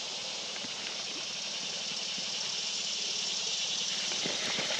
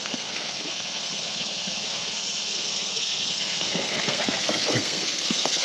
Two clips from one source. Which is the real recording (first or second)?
first